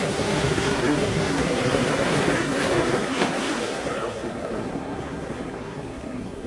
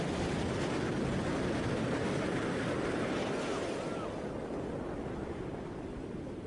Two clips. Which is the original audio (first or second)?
second